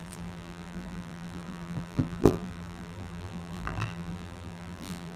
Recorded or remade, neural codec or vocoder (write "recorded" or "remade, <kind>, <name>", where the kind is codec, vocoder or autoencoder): remade, vocoder, BigVGAN v2